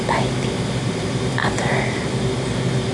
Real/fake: real